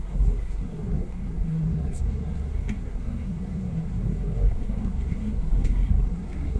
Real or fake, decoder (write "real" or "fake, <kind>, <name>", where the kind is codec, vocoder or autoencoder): fake, codec, SNAC